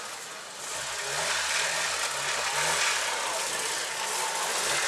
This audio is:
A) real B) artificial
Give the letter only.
A